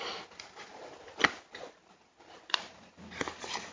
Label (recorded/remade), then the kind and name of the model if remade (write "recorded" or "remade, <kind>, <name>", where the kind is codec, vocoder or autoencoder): recorded